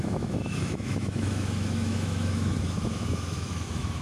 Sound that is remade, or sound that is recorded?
remade